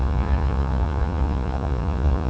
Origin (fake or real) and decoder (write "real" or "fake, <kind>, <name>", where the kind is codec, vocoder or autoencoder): fake, vocoder, Vocos